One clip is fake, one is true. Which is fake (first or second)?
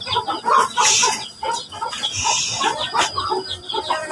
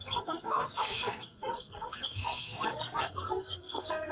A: second